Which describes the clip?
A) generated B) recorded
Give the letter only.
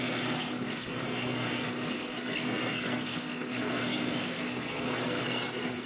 A